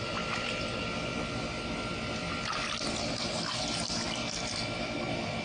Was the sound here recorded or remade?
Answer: recorded